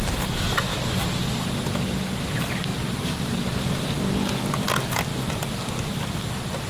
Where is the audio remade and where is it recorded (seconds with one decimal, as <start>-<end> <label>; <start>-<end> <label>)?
0.0-2.7 recorded; 2.7-4.0 remade; 4.0-5.1 recorded; 5.1-5.6 remade; 5.6-6.7 recorded